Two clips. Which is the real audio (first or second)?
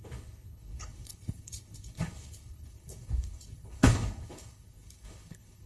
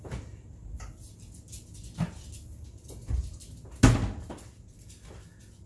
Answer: second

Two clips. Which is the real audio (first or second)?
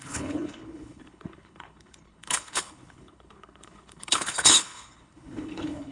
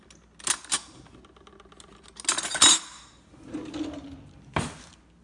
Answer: second